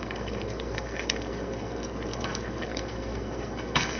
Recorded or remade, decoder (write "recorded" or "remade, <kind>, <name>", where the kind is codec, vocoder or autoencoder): remade, codec, SNAC